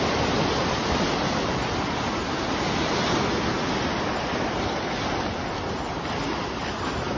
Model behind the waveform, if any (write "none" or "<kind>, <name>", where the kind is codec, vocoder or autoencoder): none